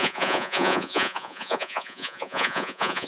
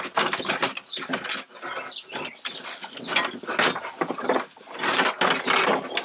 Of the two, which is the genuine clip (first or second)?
second